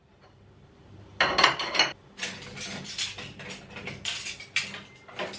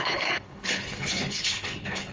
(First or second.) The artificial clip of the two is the second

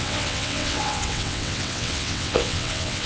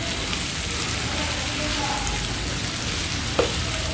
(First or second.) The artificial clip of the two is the first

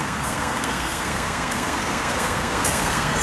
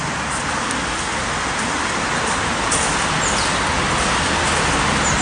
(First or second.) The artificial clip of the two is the first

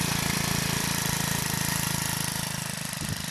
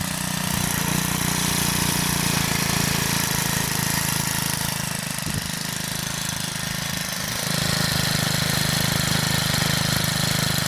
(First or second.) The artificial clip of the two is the first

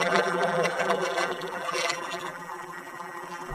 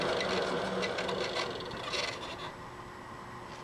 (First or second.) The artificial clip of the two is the first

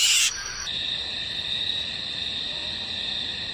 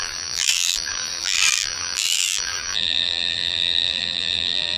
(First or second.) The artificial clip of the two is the second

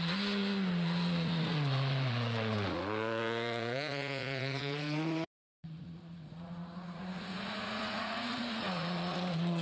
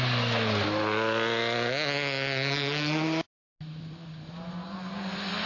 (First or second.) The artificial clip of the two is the first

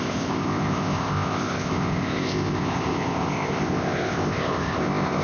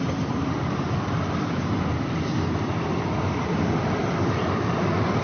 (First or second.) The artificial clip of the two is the first